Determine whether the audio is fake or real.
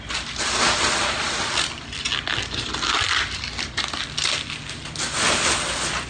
real